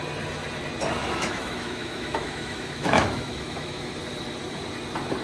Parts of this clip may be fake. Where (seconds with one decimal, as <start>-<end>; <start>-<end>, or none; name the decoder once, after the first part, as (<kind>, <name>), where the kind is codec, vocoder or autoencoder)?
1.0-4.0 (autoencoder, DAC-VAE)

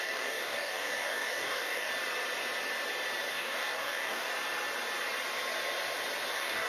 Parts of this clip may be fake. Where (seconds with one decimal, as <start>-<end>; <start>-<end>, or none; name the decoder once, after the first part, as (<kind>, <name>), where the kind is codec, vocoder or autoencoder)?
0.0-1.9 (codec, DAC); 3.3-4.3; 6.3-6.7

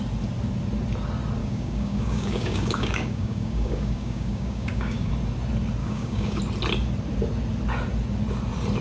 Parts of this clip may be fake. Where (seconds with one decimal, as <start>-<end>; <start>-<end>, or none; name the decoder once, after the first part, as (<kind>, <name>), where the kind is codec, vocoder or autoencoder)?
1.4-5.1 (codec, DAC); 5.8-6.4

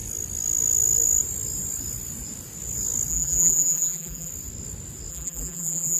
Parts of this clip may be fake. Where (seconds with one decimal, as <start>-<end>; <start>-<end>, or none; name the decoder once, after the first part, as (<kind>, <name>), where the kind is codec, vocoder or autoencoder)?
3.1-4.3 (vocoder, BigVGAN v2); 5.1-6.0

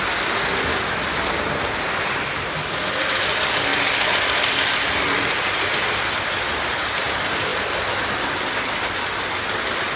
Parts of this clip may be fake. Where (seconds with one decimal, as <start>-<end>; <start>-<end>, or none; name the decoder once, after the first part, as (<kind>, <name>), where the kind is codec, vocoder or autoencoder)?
none

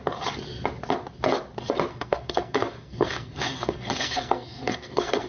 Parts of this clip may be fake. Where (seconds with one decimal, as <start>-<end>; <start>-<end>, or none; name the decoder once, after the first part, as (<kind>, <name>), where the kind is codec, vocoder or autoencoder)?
1.9-5.3 (codec, SNAC)

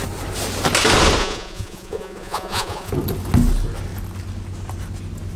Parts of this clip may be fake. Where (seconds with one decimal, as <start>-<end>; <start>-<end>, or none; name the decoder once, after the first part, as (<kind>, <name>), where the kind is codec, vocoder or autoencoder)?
1.2-2.9 (vocoder, Vocos)